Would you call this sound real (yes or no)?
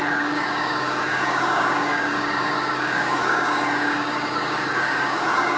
no